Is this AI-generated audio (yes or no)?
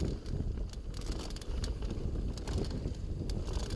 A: no